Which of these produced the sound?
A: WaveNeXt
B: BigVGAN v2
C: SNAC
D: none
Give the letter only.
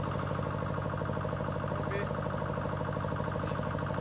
D